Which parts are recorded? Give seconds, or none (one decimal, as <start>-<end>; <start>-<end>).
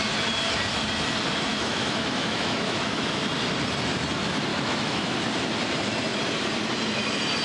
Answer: 0.0-1.5; 3.2-4.5; 5.1-7.4